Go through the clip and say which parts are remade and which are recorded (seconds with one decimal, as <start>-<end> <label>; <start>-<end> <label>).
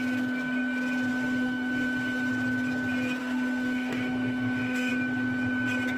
0.0-1.1 recorded; 1.1-2.3 remade; 2.3-3.2 recorded; 3.2-4.9 remade; 4.9-6.0 recorded